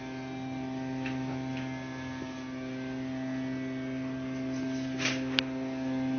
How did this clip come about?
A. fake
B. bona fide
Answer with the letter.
B